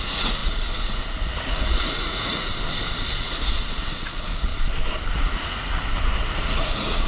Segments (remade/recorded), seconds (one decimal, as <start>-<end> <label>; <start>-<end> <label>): 0.0-2.5 remade; 2.5-3.2 recorded; 3.2-4.5 remade; 4.5-5.1 recorded; 5.1-7.1 remade